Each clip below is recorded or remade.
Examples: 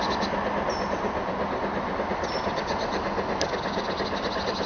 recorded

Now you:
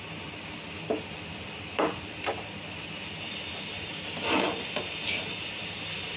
recorded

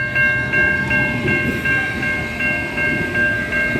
recorded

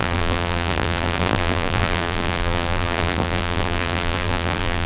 remade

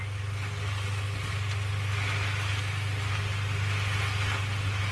recorded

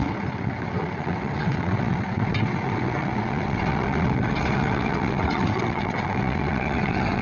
remade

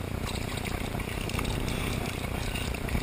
recorded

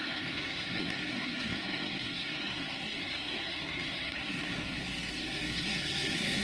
remade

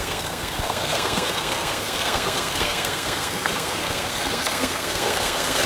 remade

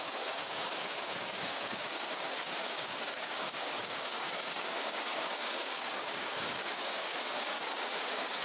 remade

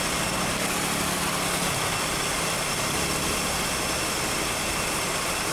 recorded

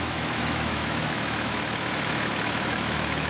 remade